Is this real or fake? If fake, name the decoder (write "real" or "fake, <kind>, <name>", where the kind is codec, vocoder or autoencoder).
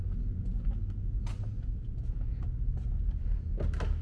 real